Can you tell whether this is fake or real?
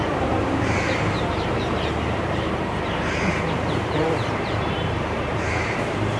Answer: fake